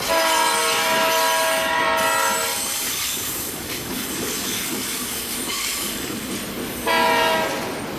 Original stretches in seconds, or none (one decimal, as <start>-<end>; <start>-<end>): 0.0-2.5; 6.3-8.0